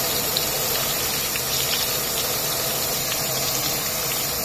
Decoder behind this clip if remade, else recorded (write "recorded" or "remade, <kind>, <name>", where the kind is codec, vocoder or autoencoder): recorded